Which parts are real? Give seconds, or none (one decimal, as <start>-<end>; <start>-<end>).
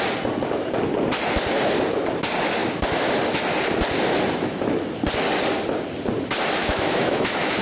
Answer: 0.0-6.6